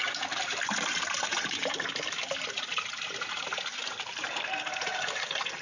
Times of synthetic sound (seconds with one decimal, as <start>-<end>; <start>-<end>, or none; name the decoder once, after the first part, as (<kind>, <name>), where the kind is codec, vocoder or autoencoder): 0.0-5.6 (vocoder, BigVGAN v2)